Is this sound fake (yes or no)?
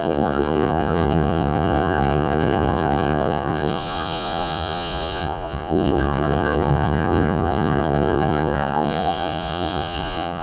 yes